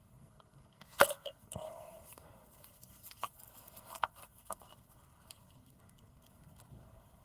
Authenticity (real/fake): fake